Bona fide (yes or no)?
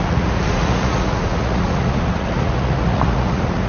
no